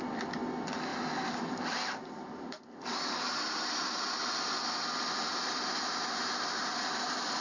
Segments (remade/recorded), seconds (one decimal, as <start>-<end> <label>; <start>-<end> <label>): 0.0-0.9 recorded; 0.9-3.7 remade; 3.7-5.3 recorded; 5.3-6.6 remade; 6.6-7.4 recorded